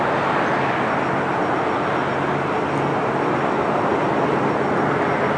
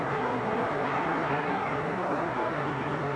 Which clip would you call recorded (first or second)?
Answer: first